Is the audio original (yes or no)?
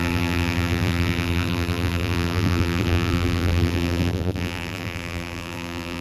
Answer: no